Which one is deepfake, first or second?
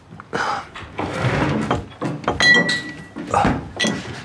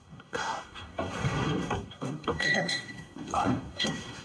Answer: second